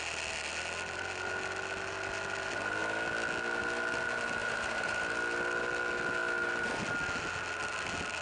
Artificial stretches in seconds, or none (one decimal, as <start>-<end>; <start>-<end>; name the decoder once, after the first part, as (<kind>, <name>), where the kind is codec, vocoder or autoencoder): 4.4-5.0 (vocoder, BigVGAN v2)